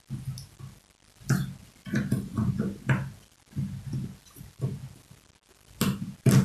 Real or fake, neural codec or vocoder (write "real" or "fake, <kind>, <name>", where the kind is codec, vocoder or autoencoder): real